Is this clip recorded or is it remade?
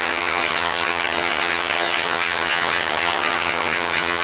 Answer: remade